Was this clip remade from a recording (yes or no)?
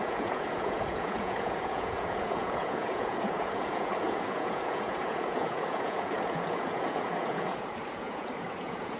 yes